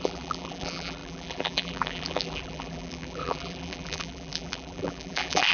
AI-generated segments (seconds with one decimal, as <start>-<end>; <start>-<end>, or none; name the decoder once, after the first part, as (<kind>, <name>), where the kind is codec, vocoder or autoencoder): 0.0-5.5 (vocoder, BigVGAN v2)